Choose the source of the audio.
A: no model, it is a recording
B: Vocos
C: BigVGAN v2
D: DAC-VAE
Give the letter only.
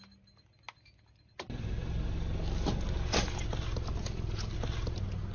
A